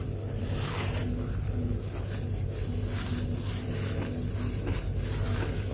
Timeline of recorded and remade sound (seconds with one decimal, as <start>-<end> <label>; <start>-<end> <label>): 0.0-5.7 recorded